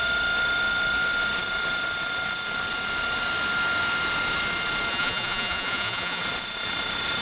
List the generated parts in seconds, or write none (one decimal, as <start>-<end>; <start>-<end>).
4.9-6.2